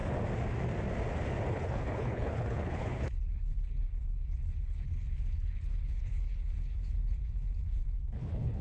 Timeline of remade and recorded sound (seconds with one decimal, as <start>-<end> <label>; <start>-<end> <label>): 0.0-1.5 recorded; 1.5-8.6 remade